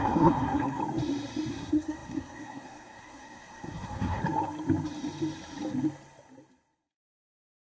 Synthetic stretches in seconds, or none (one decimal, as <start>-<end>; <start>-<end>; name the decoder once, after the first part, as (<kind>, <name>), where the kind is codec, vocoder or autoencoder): 0.0-0.8 (codec, SNAC); 1.5-4.2